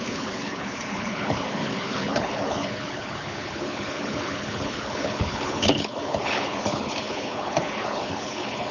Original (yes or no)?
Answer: no